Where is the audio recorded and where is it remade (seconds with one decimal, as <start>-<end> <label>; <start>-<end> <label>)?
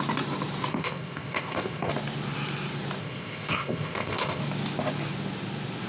0.0-0.7 recorded; 0.7-1.9 remade; 1.9-3.0 recorded; 3.0-4.4 remade; 4.4-5.9 recorded